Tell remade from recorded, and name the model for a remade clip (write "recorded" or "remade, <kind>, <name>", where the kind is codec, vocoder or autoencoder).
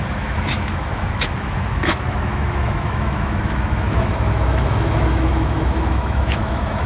remade, autoencoder, DAC-VAE